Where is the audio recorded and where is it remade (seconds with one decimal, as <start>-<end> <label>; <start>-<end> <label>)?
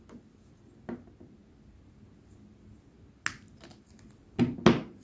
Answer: 0.0-5.0 recorded